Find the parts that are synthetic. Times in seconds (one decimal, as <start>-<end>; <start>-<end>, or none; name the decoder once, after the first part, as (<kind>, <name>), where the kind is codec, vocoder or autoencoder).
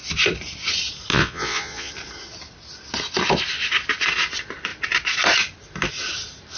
1.1-1.9 (vocoder, Vocos)